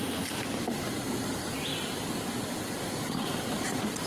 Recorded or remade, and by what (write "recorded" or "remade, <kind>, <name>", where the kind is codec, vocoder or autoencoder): recorded